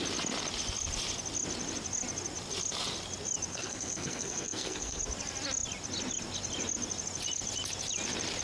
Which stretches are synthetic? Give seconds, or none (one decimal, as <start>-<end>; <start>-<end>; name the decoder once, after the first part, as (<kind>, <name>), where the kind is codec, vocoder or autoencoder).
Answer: 3.5-5.0 (codec, SNAC)